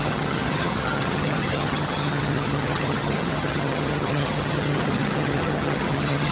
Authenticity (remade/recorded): remade